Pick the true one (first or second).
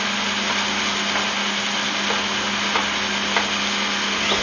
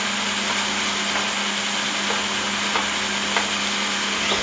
first